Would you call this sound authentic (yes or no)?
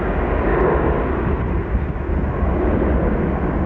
yes